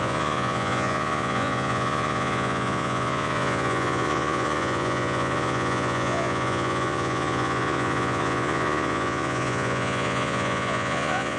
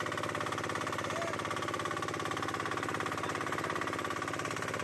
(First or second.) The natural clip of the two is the second